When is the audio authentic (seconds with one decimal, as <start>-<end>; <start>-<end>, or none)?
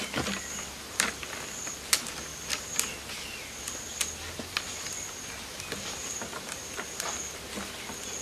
0.0-8.2